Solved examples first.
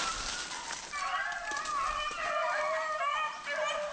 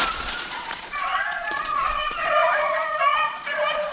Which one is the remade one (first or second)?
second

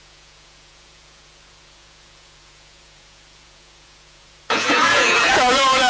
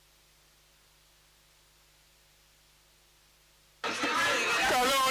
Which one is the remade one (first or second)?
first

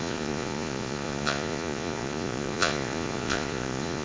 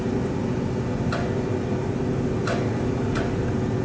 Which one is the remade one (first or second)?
first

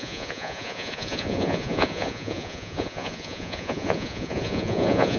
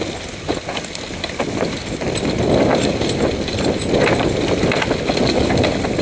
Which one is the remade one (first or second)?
first